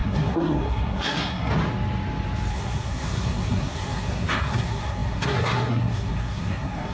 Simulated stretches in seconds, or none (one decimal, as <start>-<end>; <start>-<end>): 0.0-1.5; 2.5-6.9